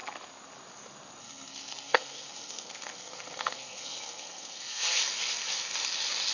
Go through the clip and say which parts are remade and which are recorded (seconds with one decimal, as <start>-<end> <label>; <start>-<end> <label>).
0.0-1.2 recorded; 1.2-5.0 remade; 5.0-6.3 recorded